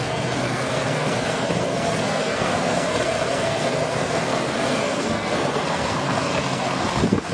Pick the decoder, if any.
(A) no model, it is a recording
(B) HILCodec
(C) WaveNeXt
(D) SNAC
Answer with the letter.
D